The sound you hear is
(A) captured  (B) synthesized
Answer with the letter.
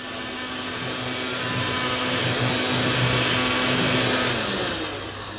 A